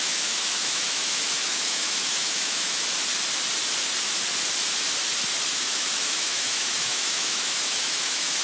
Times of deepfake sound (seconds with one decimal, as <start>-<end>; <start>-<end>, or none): 0.0-2.8; 5.5-8.4